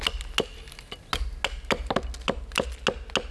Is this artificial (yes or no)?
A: no